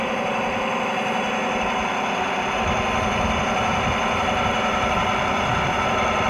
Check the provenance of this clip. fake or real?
fake